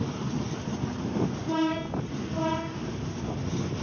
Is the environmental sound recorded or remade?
recorded